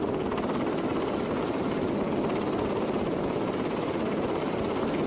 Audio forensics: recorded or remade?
recorded